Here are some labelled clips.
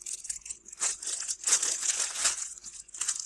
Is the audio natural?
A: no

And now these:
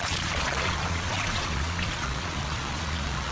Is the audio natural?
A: no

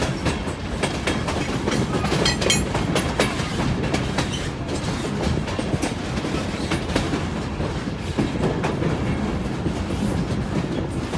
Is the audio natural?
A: yes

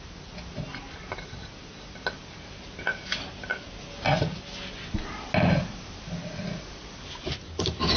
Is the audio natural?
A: yes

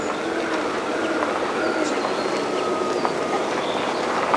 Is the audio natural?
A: yes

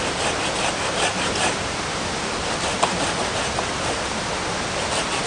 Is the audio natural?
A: yes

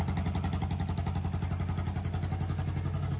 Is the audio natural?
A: yes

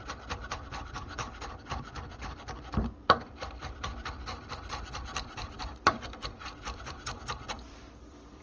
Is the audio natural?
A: no